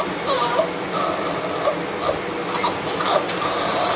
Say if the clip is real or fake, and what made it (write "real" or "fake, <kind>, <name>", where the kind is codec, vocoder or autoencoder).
real